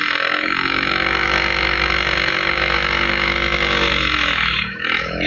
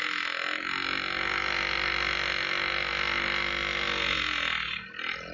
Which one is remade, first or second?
first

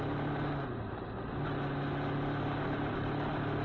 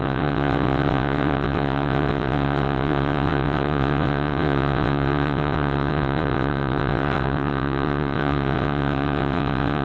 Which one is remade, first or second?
second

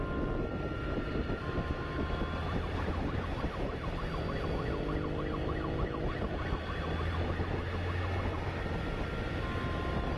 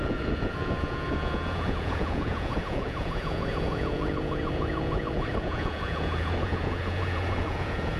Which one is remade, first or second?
second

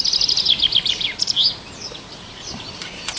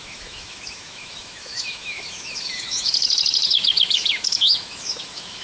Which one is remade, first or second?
second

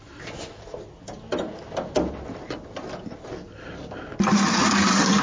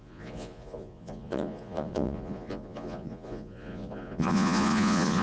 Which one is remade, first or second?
second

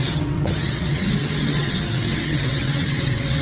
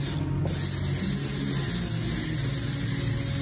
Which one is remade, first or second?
first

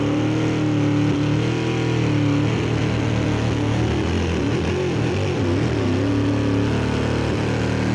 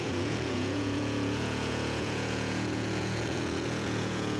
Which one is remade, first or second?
second